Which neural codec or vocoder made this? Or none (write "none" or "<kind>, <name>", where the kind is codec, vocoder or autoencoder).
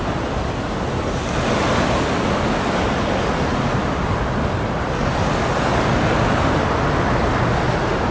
none